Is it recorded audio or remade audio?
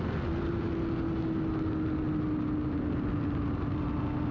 recorded